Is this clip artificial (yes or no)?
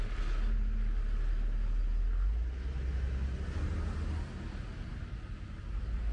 no